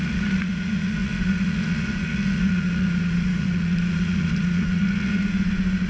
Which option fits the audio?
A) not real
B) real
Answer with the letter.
A